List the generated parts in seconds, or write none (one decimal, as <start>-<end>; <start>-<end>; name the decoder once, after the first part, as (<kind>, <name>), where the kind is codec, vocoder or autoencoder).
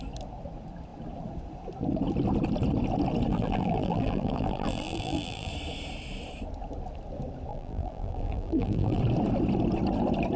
3.3-5.5 (vocoder, BigVGAN v2); 7.5-9.0